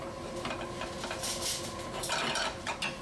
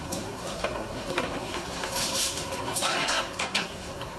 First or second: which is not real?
second